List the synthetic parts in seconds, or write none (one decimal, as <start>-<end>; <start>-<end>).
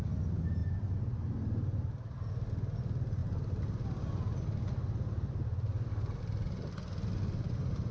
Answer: none